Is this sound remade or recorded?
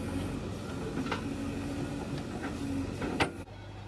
recorded